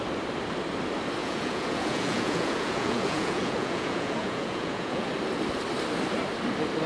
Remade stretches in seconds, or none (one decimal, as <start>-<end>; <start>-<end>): 1.2-5.1